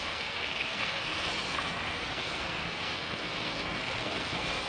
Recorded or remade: remade